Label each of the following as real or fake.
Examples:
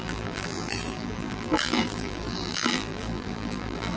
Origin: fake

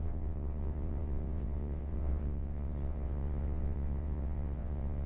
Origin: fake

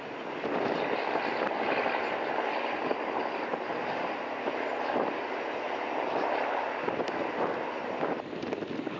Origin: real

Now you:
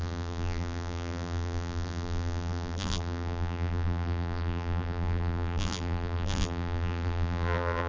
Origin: fake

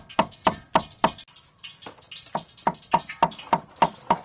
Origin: real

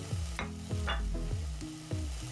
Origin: real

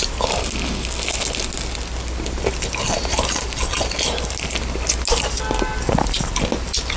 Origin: real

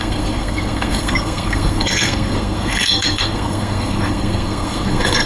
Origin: fake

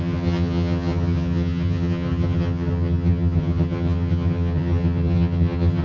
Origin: fake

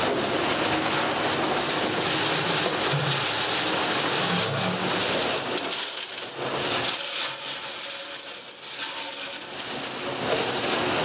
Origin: real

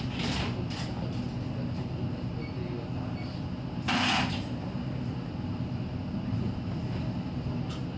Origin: real